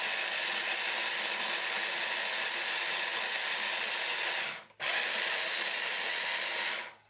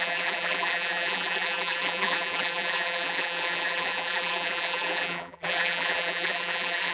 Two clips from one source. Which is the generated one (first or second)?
second